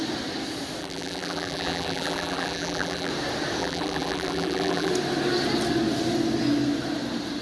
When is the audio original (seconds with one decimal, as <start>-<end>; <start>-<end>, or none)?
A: 0.0-0.8; 3.1-3.6; 4.9-7.4